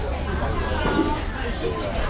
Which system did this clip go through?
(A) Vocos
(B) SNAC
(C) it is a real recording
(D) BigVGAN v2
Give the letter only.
C